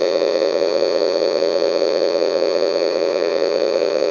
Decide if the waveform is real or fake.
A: fake